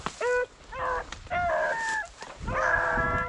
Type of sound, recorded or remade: recorded